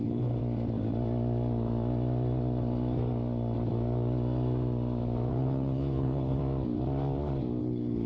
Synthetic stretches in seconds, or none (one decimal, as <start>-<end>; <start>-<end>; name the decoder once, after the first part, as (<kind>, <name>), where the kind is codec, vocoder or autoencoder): 0.0-0.4 (codec, HILCodec); 5.3-6.4; 7.6-8.1